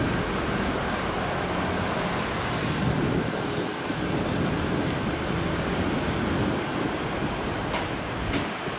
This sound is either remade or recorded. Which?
recorded